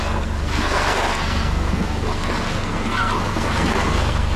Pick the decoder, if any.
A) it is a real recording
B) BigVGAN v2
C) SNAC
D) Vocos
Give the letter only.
C